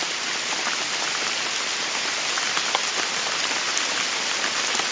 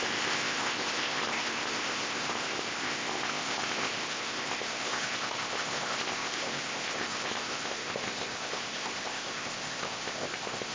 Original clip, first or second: first